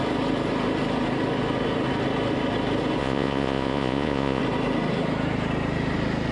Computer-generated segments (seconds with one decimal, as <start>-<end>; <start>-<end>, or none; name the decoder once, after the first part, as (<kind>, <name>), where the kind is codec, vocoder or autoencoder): 3.0-4.4 (vocoder, Vocos)